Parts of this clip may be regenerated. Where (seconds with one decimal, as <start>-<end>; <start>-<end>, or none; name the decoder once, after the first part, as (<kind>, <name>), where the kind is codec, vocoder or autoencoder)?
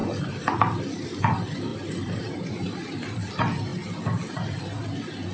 0.0-0.6 (vocoder, BigVGAN v2); 1.7-3.3